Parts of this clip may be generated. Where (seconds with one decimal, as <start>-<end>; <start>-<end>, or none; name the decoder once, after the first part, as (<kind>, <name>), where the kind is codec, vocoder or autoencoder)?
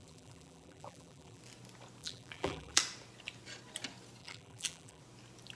0.0-1.4 (vocoder, BigVGAN v2); 2.0-2.8; 4.2-5.0